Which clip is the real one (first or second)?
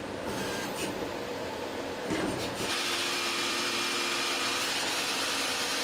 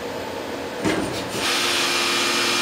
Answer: second